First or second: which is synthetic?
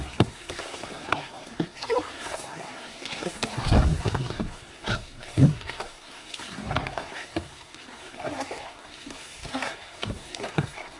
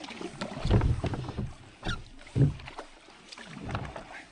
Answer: first